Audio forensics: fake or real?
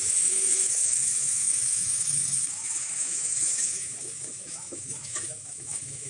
fake